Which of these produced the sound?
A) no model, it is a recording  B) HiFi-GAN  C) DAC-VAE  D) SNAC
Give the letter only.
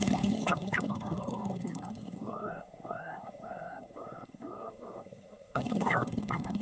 D